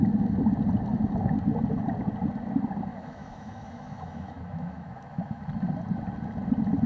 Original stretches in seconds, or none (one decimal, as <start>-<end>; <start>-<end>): 0.0-2.9; 5.4-6.9

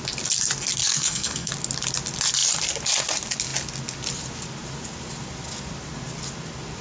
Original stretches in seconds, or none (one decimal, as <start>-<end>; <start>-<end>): 0.0-0.8; 1.5-6.8

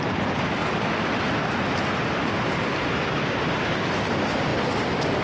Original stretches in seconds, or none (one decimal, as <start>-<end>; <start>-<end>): 0.0-5.2

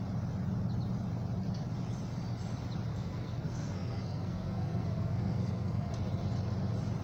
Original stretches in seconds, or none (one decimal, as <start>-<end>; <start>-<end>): 0.0-2.9; 5.9-7.0